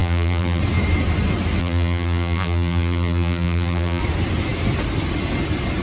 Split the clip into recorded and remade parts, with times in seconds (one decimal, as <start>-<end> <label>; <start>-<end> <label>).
0.0-0.6 remade; 0.6-1.6 recorded; 1.6-4.0 remade; 4.0-5.8 recorded